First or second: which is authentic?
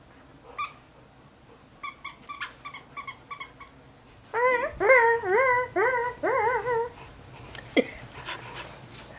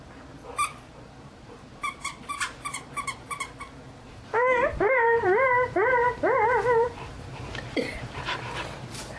first